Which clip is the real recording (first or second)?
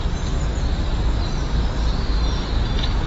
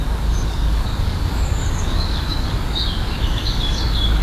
first